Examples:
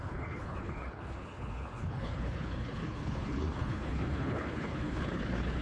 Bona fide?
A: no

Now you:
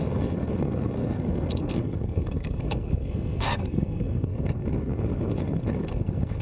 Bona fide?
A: no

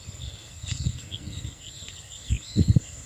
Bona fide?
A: no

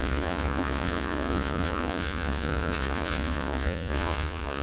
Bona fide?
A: no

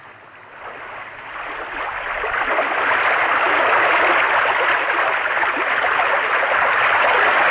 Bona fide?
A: yes